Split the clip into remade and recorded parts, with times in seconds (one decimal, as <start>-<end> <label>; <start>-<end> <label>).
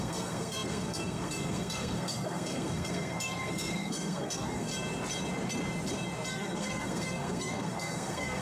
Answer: 0.0-4.7 remade; 4.7-6.3 recorded; 6.3-8.4 remade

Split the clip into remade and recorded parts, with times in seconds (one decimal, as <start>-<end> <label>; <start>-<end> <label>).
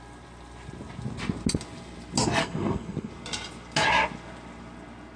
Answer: 0.0-2.4 recorded; 2.4-3.1 remade; 3.1-5.2 recorded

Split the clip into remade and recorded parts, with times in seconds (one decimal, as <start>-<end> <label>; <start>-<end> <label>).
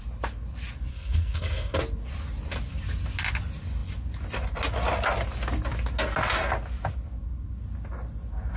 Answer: 0.0-0.9 recorded; 0.9-1.8 remade; 1.8-8.6 recorded